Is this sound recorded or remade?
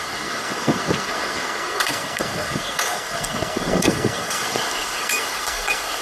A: remade